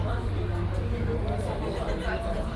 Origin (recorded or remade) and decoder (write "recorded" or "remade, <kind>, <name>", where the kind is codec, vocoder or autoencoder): recorded